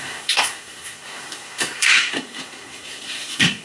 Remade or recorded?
remade